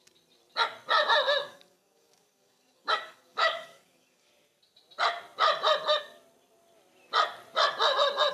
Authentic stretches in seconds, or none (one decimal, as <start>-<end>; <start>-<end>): 0.0-1.4; 4.3-8.3